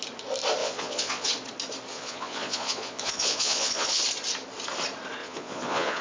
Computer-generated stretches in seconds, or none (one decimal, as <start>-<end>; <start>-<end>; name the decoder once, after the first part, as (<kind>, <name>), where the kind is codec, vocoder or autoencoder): 0.6-1.3 (vocoder, Vocos); 1.9-4.0; 5.2-6.0

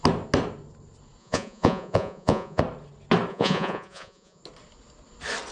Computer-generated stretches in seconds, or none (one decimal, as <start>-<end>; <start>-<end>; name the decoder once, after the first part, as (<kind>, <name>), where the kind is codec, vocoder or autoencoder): 1.2-2.6 (vocoder, Vocos); 3.3-4.4

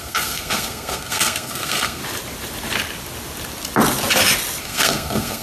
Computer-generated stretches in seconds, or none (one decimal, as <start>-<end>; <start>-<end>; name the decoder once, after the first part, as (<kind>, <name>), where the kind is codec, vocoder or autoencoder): 0.0-2.0 (codec, SNAC); 4.6-5.4

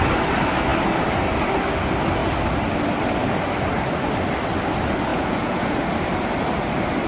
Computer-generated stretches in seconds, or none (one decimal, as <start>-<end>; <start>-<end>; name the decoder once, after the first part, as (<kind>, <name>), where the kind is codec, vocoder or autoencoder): 5.1-5.8 (vocoder, Vocos)

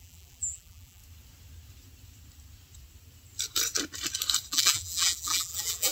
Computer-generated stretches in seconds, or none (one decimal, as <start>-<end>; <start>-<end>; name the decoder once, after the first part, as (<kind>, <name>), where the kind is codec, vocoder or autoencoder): 0.0-1.0 (vocoder, BigVGAN v2); 4.5-5.9

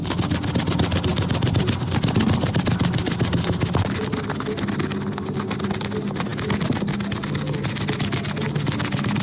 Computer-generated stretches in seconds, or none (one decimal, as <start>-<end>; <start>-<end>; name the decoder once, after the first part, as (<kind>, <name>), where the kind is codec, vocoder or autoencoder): 1.1-2.6 (vocoder, BigVGAN v2)